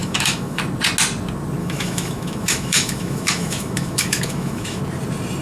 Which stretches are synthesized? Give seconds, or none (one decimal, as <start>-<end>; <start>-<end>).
0.0-0.6; 1.6-4.8